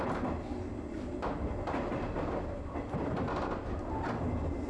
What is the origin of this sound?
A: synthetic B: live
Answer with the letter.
B